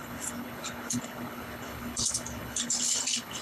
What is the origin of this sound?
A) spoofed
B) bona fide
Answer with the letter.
A